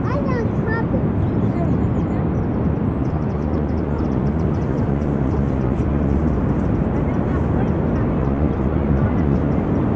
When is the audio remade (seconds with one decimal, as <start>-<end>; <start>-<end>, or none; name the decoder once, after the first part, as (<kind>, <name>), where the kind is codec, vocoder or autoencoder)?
3.0-6.4 (vocoder, Vocos); 8.2-9.5